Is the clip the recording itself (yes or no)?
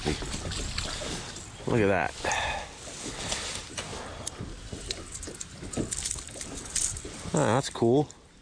yes